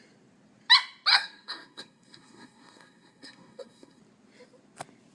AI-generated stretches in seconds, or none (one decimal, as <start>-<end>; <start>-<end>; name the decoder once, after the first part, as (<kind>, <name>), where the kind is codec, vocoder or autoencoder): 1.1-4.0 (codec, SNAC)